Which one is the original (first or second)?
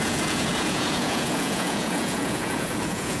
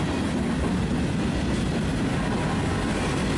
second